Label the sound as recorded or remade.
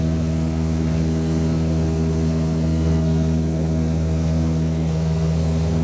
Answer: remade